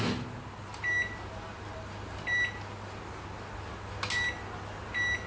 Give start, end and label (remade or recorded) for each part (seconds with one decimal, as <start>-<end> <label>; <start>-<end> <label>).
0.0-5.3 recorded